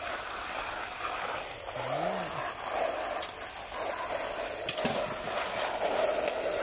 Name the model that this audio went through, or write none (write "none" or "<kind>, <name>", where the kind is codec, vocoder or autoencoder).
none